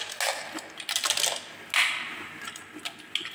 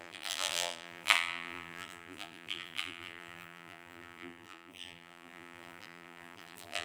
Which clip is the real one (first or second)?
first